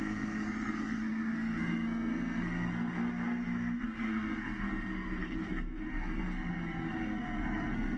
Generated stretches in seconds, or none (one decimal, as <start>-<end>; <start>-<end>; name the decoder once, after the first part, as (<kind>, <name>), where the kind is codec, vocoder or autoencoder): 0.0-8.0 (codec, SNAC)